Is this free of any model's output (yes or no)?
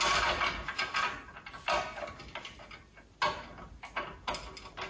yes